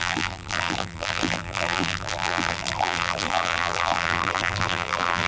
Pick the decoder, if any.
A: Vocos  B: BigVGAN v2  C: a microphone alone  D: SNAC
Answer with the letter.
B